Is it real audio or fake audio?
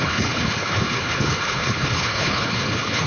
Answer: fake